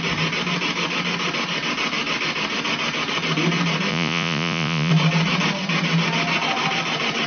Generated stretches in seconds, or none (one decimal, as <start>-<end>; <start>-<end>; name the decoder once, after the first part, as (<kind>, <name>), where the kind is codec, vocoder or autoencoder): 3.9-4.9 (vocoder, Vocos)